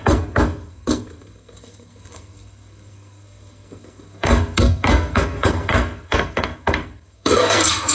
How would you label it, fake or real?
fake